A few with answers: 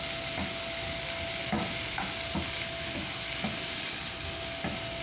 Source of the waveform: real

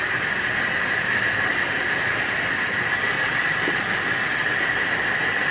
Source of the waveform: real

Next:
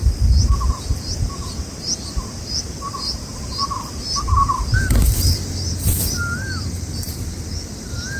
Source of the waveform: fake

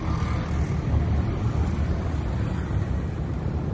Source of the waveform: real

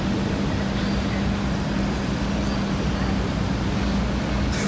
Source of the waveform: real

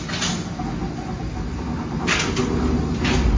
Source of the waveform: real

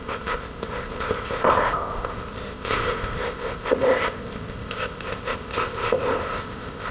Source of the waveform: fake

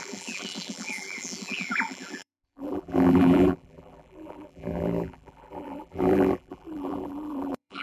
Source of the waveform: fake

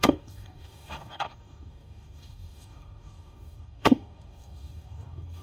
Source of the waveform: fake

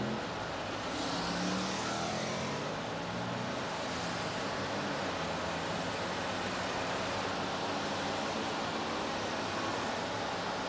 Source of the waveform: real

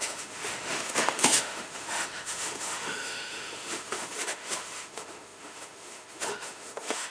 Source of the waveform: fake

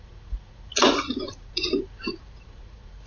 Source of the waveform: fake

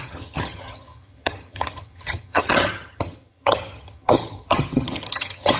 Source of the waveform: fake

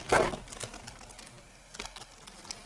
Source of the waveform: real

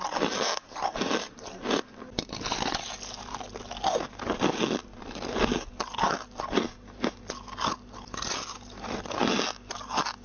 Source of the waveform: real